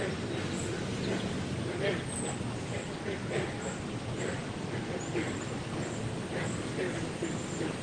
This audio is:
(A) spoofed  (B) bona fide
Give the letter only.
B